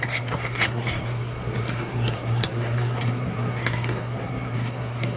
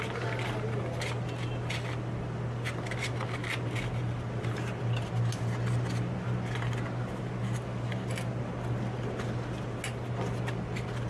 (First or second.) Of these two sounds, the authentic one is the second